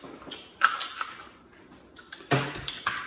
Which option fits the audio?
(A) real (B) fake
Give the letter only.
B